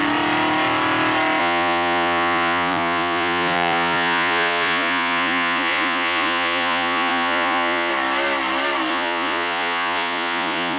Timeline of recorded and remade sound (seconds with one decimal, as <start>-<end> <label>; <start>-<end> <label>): 0.0-1.4 recorded; 1.4-7.9 remade; 7.9-8.9 recorded; 8.9-10.8 remade